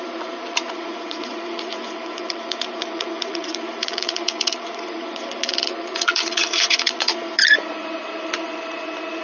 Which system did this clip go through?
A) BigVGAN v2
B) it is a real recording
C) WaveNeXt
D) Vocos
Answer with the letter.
D